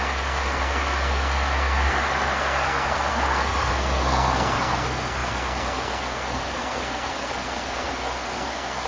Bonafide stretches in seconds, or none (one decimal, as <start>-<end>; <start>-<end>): none